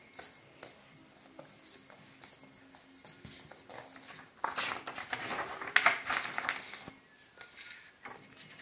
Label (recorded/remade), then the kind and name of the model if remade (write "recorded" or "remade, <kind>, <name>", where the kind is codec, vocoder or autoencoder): recorded